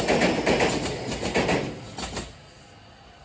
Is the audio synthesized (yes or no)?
no